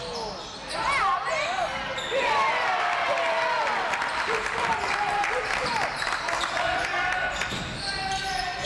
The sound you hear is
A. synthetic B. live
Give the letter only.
B